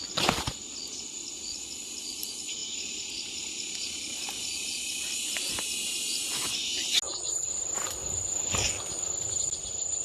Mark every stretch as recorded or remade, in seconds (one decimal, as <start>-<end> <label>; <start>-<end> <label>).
0.0-10.0 recorded